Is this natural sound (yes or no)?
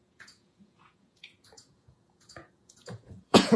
no